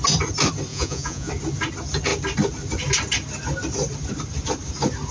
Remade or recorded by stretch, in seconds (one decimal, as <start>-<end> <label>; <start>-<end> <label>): 0.0-0.7 recorded; 0.7-1.3 remade; 1.3-5.1 recorded